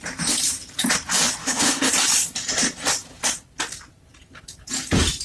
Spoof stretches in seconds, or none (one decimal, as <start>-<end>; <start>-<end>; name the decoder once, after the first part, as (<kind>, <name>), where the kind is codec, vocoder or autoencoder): 1.4-1.9 (autoencoder, DAC-VAE)